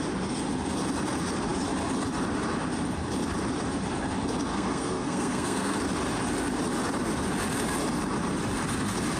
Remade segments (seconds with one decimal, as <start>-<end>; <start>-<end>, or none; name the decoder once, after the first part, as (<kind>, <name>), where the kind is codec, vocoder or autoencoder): 4.5-5.8 (codec, SNAC)